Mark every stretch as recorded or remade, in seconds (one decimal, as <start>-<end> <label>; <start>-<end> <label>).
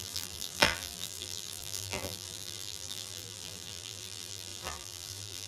0.0-5.5 remade